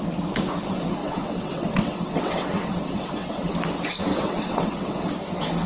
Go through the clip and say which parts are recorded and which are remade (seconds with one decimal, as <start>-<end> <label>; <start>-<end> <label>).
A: 0.0-1.0 recorded; 1.0-3.5 remade; 3.5-4.1 recorded; 4.1-5.1 remade; 5.1-5.7 recorded